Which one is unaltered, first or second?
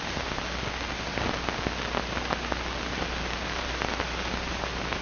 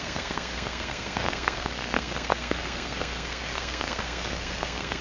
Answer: first